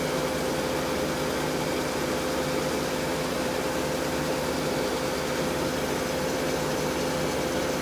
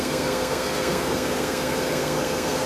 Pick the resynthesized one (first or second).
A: second